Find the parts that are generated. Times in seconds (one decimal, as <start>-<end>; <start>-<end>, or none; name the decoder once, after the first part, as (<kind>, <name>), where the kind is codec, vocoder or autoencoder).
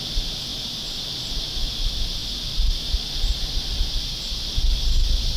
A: none